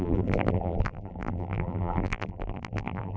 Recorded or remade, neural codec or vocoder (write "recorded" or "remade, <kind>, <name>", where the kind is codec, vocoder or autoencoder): remade, vocoder, BigVGAN v2